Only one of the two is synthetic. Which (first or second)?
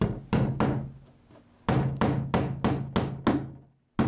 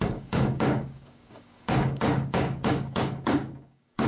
second